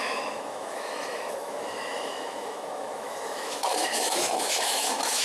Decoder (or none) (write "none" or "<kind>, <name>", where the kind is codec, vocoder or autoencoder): autoencoder, DAC-VAE